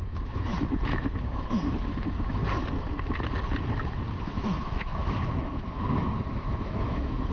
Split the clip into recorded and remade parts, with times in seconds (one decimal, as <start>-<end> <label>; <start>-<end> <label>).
0.0-2.4 remade; 2.4-4.2 recorded; 4.2-7.3 remade